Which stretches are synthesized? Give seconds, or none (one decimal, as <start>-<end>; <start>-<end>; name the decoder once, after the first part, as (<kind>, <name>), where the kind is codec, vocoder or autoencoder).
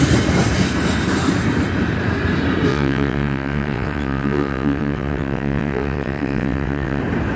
2.7-7.0 (vocoder, WaveNeXt)